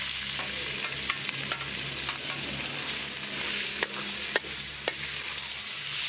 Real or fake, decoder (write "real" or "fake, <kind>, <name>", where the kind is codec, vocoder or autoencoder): real